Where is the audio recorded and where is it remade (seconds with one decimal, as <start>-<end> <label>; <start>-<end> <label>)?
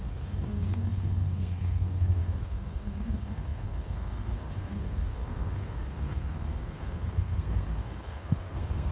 0.0-8.9 remade